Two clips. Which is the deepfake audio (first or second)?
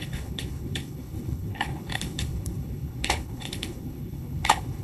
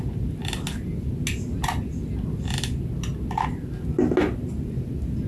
first